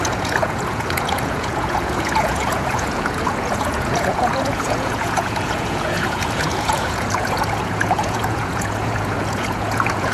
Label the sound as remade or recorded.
remade